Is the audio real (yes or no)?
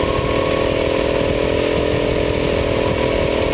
yes